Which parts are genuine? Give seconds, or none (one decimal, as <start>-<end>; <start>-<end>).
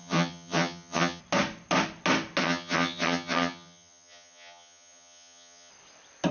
1.2-2.4; 5.7-6.3